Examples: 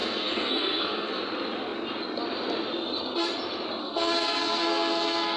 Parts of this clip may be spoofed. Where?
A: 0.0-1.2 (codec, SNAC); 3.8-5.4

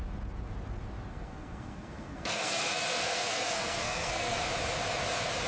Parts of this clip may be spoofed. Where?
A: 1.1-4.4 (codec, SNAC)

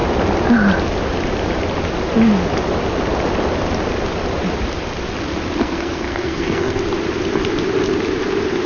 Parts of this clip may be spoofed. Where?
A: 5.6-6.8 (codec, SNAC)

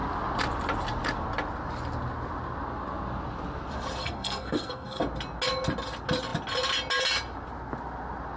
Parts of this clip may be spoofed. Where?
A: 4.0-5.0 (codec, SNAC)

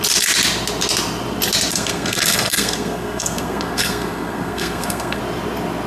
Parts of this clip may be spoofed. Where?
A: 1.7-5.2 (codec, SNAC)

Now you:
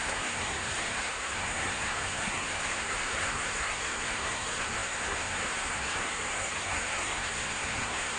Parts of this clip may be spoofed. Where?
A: 0.0-8.2 (codec, SNAC)

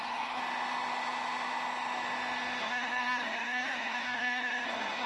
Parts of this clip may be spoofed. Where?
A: 0.0-0.4 (codec, SNAC); 2.6-5.1